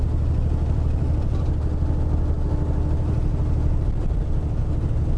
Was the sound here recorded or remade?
recorded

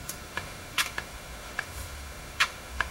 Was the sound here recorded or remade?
remade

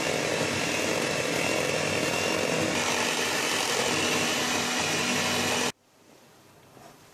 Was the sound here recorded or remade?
recorded